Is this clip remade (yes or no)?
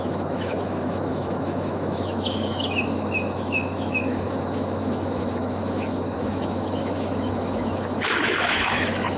yes